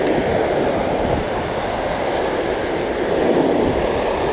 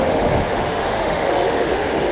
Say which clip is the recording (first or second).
first